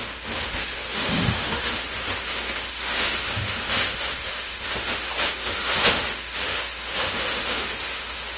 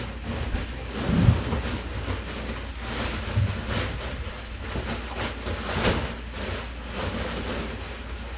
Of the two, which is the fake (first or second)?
first